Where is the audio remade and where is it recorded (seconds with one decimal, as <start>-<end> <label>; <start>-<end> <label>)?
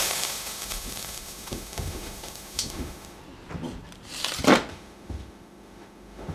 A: 0.0-3.2 remade; 3.2-4.7 recorded; 4.7-6.3 remade